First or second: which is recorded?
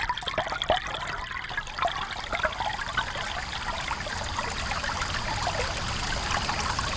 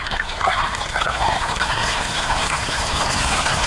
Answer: first